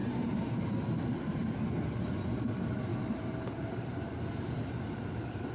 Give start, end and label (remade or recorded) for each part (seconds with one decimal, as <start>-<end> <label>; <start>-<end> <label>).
0.0-0.7 remade; 0.7-1.4 recorded; 1.4-2.0 remade; 2.0-2.9 recorded; 2.9-5.1 remade; 5.1-5.5 recorded